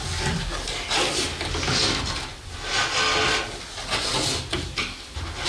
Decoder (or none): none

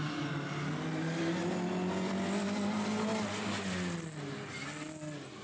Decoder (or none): none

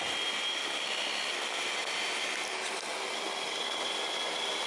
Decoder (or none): none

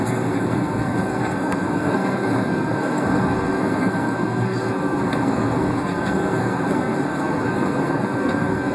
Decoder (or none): codec, SNAC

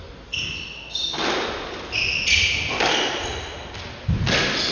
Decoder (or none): none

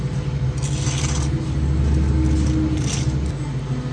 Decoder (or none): none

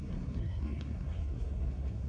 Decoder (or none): codec, SNAC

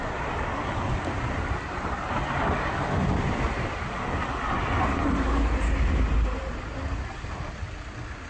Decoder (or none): none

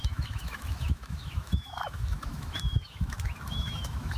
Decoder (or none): autoencoder, DAC-VAE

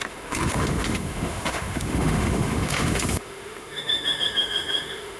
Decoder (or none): autoencoder, DAC-VAE